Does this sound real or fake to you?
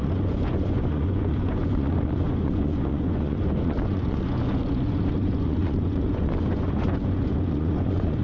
fake